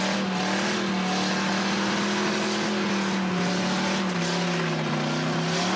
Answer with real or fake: real